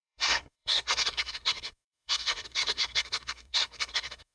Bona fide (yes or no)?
no